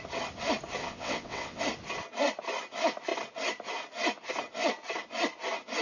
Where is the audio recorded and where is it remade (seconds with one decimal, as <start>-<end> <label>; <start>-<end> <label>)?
0.0-0.8 recorded; 0.8-1.6 remade; 1.6-5.8 recorded